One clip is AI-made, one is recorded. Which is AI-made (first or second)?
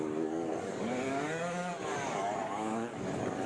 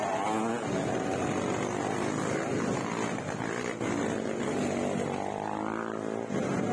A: first